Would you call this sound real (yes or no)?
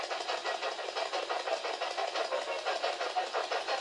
yes